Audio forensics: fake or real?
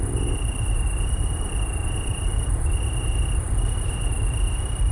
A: fake